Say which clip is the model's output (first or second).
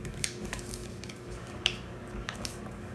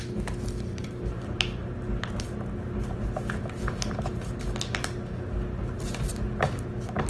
first